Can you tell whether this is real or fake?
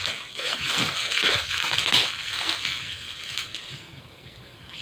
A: fake